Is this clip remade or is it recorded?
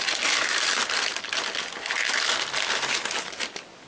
recorded